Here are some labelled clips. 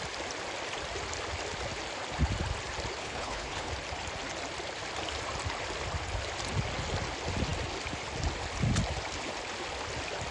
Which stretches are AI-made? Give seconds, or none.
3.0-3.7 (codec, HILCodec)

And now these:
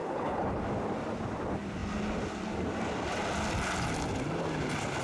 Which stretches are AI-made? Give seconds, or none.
0.0-0.6 (codec, HILCodec)

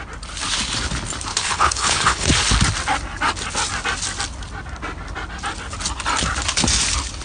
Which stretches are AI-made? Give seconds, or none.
1.3-2.3 (codec, HILCodec)

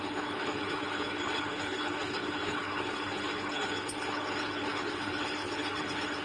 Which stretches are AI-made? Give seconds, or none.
0.0-6.2 (codec, HILCodec)

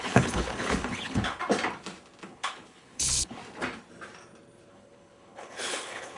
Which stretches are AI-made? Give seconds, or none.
0.0-1.4 (codec, HILCodec); 2.3-3.4; 4.7-6.2

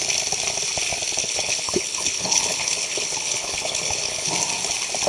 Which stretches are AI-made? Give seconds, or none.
1.2-4.3 (codec, HILCodec)

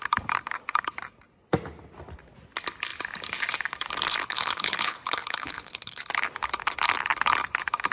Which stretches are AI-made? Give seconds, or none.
4.2-6.0 (codec, HILCodec)